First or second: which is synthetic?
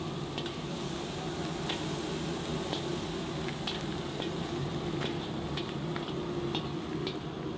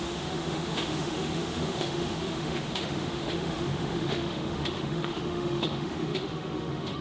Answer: second